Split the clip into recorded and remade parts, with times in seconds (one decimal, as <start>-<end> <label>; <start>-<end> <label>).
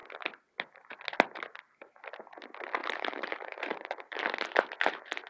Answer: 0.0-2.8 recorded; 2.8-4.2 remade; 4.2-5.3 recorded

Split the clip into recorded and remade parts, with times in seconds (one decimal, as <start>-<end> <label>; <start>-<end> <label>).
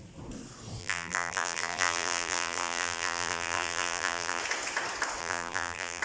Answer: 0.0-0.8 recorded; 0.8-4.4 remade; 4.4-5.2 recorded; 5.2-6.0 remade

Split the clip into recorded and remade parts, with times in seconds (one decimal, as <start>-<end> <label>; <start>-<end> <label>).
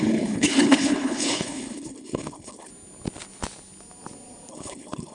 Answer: 0.0-2.7 remade; 2.7-4.5 recorded; 4.5-5.1 remade